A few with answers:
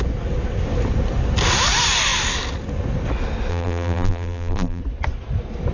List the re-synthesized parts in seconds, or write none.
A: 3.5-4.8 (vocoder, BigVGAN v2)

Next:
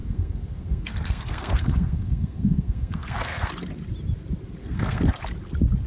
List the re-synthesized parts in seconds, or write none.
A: 0.0-3.5 (codec, SNAC); 4.6-5.2

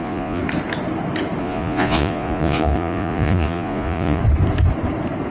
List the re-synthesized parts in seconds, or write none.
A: 0.0-0.4 (vocoder, Vocos); 1.4-4.2